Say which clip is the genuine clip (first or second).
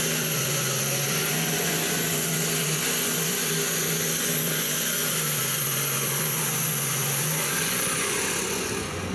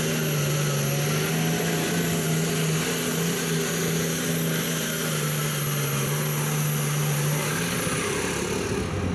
second